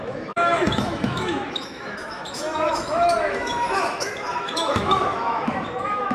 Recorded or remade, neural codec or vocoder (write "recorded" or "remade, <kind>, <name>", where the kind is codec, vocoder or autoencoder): remade, autoencoder, DAC-VAE